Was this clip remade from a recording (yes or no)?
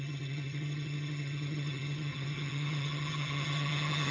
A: yes